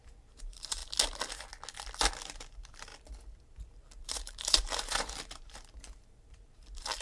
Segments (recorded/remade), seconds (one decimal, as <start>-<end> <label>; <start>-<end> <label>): 0.0-0.8 remade; 0.8-2.1 recorded; 2.1-2.9 remade; 2.9-3.4 recorded; 3.4-7.0 remade